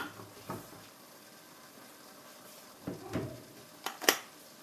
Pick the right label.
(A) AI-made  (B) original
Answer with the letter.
A